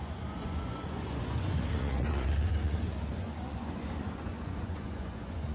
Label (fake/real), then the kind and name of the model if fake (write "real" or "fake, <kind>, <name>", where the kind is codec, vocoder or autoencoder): fake, vocoder, Vocos